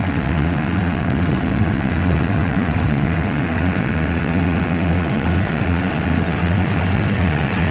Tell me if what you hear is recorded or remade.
remade